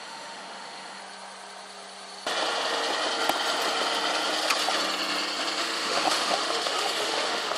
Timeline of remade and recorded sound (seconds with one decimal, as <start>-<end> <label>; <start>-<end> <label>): 0.0-1.0 remade; 1.0-5.6 recorded; 5.6-7.6 remade